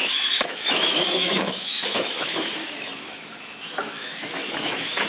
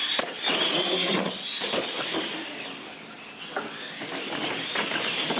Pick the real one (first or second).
second